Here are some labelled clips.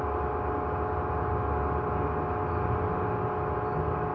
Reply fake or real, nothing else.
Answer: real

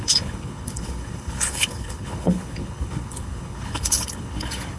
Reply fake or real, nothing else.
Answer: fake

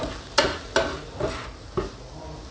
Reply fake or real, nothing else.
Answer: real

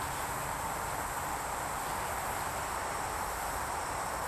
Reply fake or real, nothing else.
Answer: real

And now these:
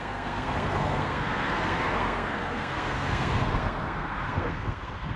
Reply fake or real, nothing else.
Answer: fake